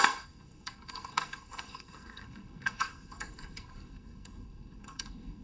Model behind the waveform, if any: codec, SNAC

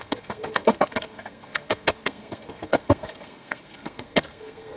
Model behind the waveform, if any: codec, SNAC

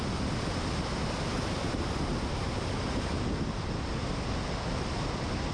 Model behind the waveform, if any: none